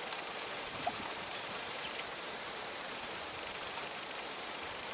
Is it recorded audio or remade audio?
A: remade